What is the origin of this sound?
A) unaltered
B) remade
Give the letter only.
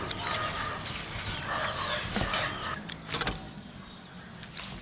A